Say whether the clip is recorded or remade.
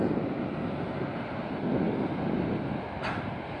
recorded